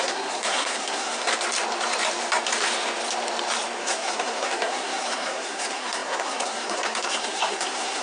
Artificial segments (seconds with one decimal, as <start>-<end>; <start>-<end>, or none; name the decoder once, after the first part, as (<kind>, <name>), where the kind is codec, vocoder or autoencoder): 0.0-1.3 (codec, SNAC); 3.8-8.0